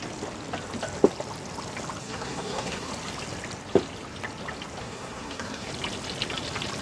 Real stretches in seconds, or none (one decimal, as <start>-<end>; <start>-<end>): 0.0-2.0; 2.9-4.8; 5.7-6.8